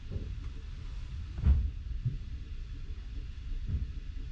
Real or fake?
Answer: real